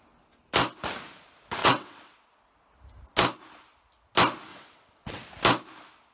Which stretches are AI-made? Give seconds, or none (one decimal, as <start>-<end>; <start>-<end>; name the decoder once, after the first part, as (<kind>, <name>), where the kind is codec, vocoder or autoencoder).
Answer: 1.6-2.2 (vocoder, WaveNeXt); 4.5-5.2